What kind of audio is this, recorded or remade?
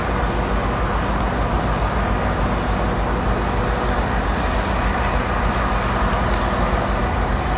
recorded